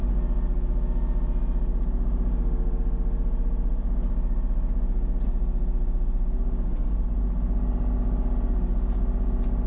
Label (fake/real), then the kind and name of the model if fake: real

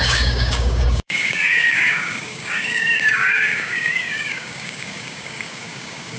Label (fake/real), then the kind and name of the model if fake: fake, codec, DAC